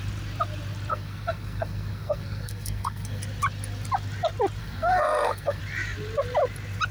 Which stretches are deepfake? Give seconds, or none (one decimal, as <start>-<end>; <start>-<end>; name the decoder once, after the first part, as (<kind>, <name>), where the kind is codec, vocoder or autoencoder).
0.9-3.2 (codec, SNAC); 4.6-5.6